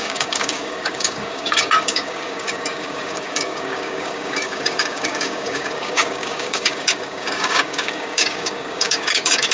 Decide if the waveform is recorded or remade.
remade